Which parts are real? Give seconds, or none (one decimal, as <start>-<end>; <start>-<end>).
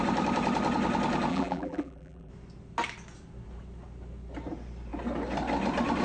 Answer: 0.0-1.3; 2.3-6.0